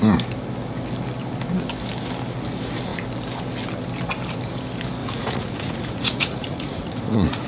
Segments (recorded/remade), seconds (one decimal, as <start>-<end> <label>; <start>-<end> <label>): 0.0-5.0 recorded; 5.0-7.5 remade

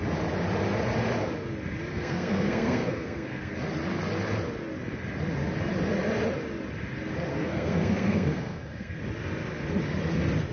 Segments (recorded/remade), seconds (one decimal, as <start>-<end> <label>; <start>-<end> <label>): 0.0-1.9 recorded; 1.9-3.5 remade; 3.5-7.3 recorded; 7.3-9.0 remade; 9.0-10.5 recorded

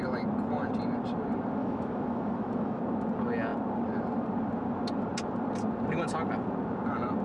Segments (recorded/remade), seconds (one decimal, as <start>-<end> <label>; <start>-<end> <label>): 0.0-1.6 recorded; 1.6-2.8 remade; 2.8-7.2 recorded

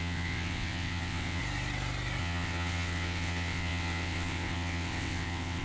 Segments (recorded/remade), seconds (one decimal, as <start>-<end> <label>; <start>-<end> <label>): 0.0-1.4 remade; 1.4-2.2 recorded; 2.2-5.6 remade

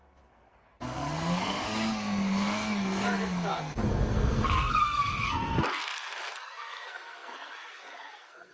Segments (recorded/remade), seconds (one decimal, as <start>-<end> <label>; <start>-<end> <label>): 0.0-8.5 remade

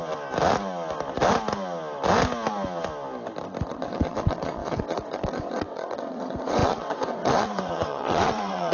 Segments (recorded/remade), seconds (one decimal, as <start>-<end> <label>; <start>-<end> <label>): 0.0-3.7 recorded; 3.7-8.7 remade

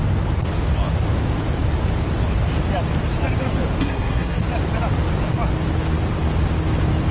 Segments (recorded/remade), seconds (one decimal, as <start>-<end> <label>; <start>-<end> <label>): 0.0-3.8 recorded; 3.8-4.4 remade; 4.4-7.1 recorded

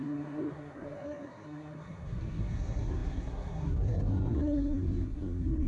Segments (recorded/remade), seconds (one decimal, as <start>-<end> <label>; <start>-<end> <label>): 0.0-5.7 remade